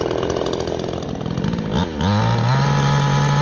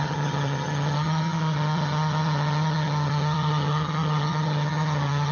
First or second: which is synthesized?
second